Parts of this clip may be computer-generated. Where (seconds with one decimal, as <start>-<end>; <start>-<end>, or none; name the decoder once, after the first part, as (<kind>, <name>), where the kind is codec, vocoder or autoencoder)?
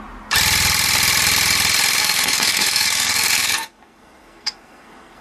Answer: 2.0-5.2 (codec, SNAC)